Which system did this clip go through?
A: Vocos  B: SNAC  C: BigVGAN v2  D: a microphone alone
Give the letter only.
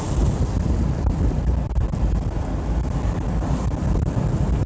D